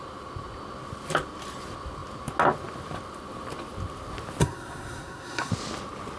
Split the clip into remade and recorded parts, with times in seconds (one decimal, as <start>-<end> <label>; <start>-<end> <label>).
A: 0.0-4.4 recorded; 4.4-5.5 remade; 5.5-6.2 recorded